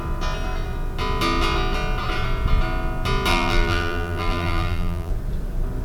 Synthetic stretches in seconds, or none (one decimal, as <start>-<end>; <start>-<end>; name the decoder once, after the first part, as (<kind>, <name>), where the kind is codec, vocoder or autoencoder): 3.3-5.1 (vocoder, BigVGAN v2)